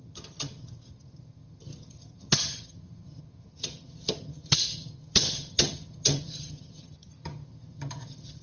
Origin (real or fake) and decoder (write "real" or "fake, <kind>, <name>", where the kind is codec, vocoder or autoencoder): fake, vocoder, HiFi-GAN